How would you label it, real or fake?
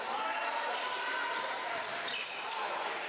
real